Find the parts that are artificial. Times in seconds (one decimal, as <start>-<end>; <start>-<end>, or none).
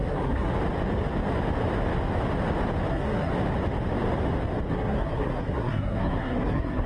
0.0-0.5; 2.9-3.3; 4.7-6.9